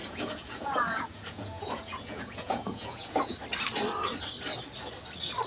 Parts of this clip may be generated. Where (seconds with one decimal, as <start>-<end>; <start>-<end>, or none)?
0.0-3.3

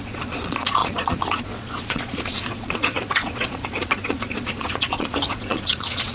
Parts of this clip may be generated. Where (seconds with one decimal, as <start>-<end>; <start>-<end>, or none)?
0.0-6.1

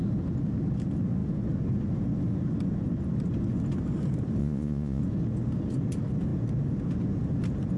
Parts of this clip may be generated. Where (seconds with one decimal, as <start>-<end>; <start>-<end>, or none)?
4.4-5.0

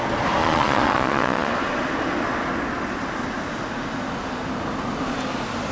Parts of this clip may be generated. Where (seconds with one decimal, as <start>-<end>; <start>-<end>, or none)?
0.4-1.5

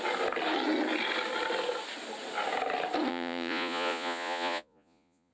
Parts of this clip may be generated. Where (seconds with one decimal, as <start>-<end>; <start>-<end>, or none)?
3.1-5.3

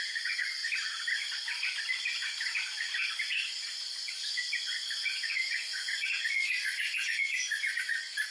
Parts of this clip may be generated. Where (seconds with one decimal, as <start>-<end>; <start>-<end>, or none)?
0.0-0.6; 4.6-8.3

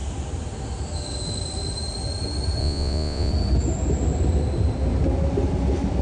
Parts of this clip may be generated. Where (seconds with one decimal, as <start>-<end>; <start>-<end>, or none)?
2.6-3.3